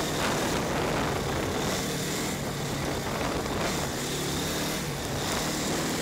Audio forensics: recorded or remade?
recorded